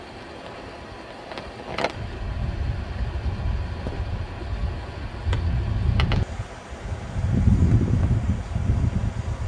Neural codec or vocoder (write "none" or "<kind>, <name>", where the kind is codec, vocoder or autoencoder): none